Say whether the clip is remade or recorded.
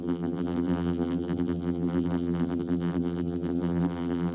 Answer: remade